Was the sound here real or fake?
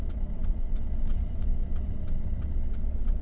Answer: fake